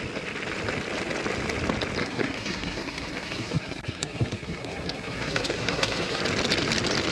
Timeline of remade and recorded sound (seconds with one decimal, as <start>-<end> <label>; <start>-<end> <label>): 0.0-2.0 recorded; 2.0-6.2 remade; 6.2-7.1 recorded